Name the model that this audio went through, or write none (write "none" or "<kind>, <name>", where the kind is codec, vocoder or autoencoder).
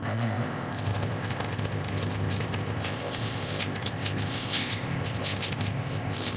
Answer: codec, ZipCodec